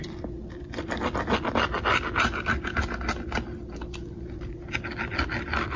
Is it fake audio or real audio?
real